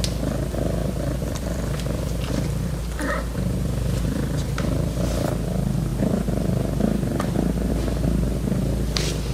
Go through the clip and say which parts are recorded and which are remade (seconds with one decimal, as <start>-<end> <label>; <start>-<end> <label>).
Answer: 0.0-0.8 recorded; 0.8-4.7 remade; 4.7-9.3 recorded